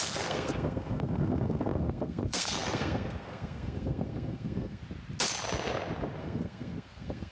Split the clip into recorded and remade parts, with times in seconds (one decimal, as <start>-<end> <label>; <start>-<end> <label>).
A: 0.0-4.8 remade; 4.8-6.2 recorded; 6.2-7.3 remade